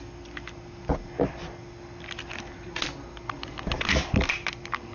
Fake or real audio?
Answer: real